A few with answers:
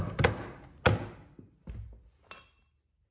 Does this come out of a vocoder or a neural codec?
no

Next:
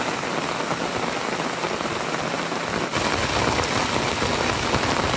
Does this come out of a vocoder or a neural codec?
no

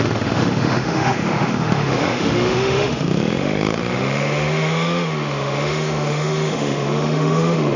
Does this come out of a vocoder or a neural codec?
yes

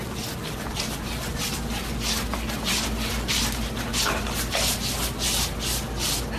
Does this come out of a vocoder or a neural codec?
no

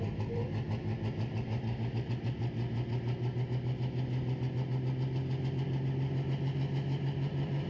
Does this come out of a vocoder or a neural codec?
no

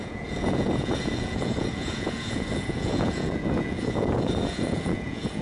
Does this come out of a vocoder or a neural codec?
yes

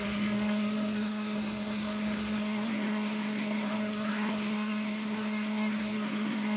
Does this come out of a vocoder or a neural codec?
yes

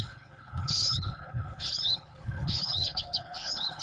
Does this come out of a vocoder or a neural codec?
yes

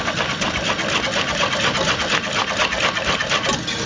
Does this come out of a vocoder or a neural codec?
no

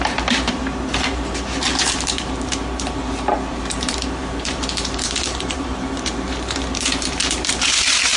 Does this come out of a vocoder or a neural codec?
yes